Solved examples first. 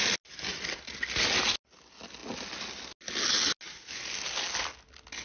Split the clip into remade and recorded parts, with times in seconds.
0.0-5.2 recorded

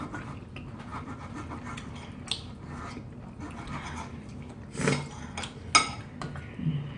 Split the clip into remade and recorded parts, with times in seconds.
0.0-7.0 recorded

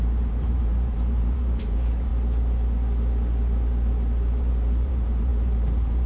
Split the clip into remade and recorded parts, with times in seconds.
0.0-2.1 remade; 2.1-4.4 recorded; 4.4-6.1 remade

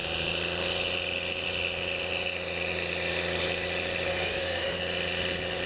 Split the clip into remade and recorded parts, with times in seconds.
0.0-4.1 recorded; 4.1-4.8 remade; 4.8-5.7 recorded

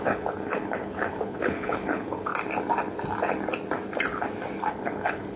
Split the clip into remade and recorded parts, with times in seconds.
0.0-2.3 remade; 2.3-4.7 recorded; 4.7-5.4 remade

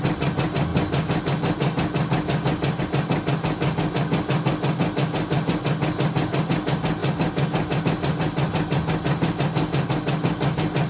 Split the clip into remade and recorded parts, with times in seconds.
0.0-10.9 recorded